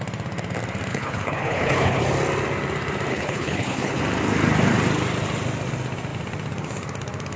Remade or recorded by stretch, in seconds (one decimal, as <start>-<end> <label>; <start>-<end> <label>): 0.0-0.9 recorded; 0.9-2.0 remade; 2.0-3.1 recorded; 3.1-4.0 remade; 4.0-7.4 recorded

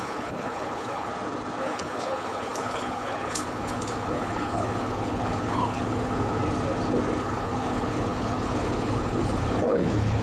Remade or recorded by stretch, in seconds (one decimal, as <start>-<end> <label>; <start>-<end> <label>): 0.0-1.1 remade; 1.1-1.6 recorded; 1.6-6.4 remade; 6.4-7.2 recorded; 7.2-10.2 remade

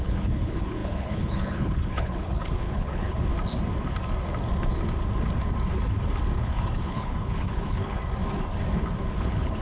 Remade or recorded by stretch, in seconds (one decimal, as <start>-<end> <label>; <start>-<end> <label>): 0.0-3.3 remade; 3.3-6.4 recorded; 6.4-8.0 remade; 8.0-9.0 recorded; 9.0-9.6 remade